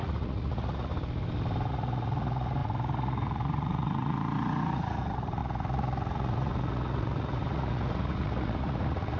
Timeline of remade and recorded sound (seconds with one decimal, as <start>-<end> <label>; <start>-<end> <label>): 0.0-0.9 remade; 0.9-1.7 recorded; 1.7-9.2 remade